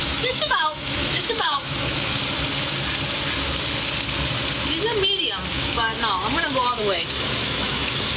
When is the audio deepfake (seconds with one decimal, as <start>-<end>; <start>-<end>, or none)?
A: 0.0-2.2; 5.5-5.9; 6.8-8.2